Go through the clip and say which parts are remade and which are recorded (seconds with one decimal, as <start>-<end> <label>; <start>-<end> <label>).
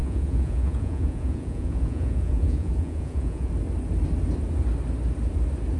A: 0.0-3.5 remade; 3.5-5.8 recorded